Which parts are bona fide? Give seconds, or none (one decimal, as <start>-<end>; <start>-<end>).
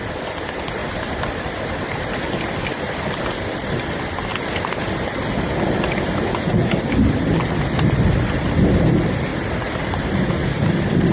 0.0-0.8; 2.0-4.3; 6.1-9.3; 10.7-11.1